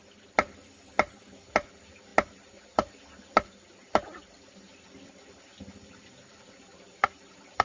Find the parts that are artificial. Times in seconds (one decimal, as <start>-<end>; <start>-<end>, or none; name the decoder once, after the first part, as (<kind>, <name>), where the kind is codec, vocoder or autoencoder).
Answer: none